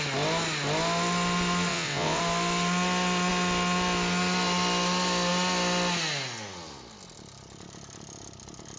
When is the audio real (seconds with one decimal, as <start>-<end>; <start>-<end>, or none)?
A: 0.0-1.7; 2.2-8.8